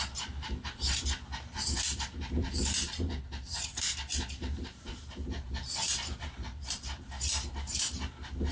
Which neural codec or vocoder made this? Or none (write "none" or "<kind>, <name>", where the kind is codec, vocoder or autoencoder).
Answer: vocoder, BigVGAN v2